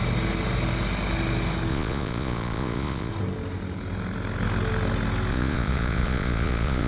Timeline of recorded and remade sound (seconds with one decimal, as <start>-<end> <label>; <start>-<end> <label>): 0.0-1.7 recorded; 1.7-3.1 remade; 3.1-5.3 recorded; 5.3-6.9 remade